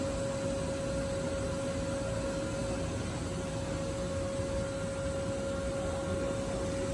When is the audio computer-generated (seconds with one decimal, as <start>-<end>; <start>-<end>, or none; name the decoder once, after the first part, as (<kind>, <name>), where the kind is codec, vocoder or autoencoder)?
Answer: none